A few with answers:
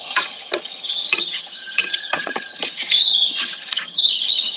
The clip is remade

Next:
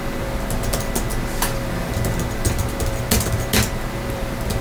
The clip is recorded